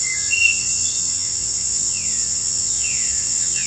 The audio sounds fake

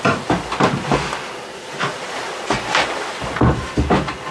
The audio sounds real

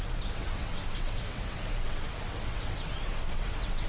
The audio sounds fake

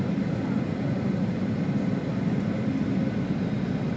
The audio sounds real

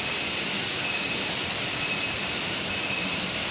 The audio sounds real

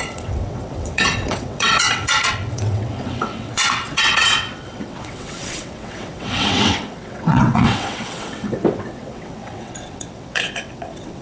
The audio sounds fake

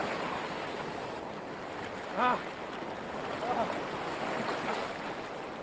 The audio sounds real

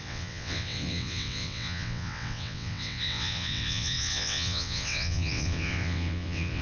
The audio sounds fake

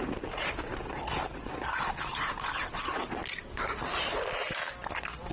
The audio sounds real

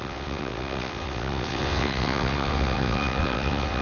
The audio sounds fake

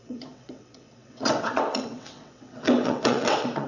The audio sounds fake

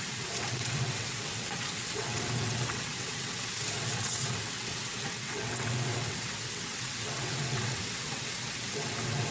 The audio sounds fake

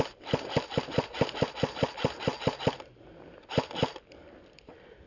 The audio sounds real